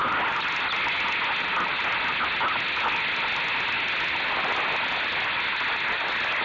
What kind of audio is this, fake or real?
real